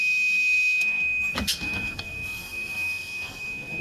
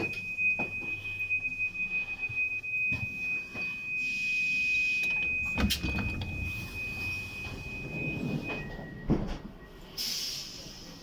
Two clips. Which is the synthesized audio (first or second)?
first